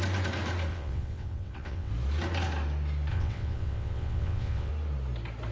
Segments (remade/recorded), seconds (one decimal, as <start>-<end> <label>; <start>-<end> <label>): 0.0-0.7 recorded; 0.7-1.9 remade; 1.9-3.1 recorded; 3.1-4.7 remade; 4.7-5.5 recorded